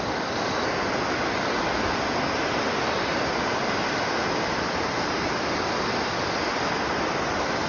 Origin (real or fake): real